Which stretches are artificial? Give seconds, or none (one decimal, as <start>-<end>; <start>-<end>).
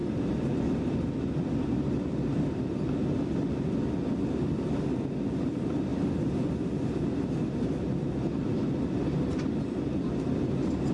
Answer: 5.9-7.3